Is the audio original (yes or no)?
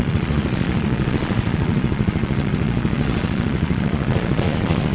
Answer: no